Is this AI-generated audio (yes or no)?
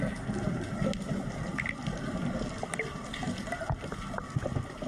no